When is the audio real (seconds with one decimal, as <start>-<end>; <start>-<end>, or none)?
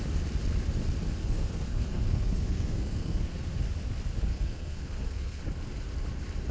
0.0-1.2; 3.6-4.3; 5.4-6.5